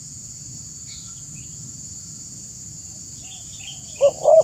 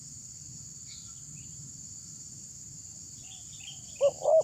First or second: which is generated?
first